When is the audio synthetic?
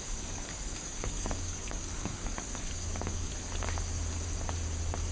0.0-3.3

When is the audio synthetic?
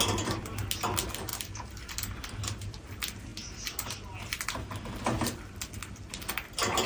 none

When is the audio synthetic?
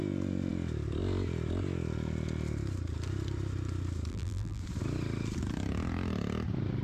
4.1-4.6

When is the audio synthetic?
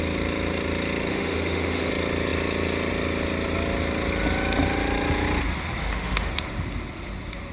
1.1-1.9; 5.8-6.3